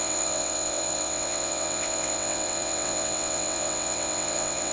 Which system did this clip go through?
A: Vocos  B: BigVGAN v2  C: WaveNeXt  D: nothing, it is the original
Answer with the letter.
C